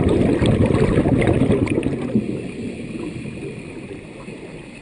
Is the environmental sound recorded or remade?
remade